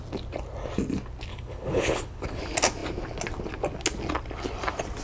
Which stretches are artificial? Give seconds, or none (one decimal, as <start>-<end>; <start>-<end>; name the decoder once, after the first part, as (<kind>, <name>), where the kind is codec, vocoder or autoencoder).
1.3-2.4 (codec, HILCodec)